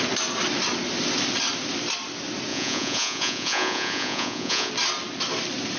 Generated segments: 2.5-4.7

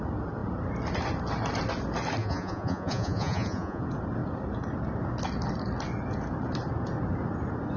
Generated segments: 2.2-3.8